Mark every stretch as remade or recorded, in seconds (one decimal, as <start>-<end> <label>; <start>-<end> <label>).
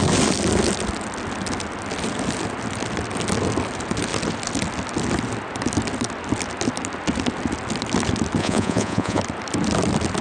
0.0-8.4 recorded; 8.4-9.2 remade; 9.2-10.2 recorded